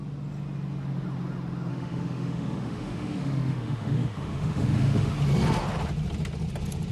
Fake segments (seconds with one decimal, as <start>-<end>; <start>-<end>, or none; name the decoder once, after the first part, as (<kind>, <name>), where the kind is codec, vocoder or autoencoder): 1.7-5.1 (autoencoder, DAC-VAE)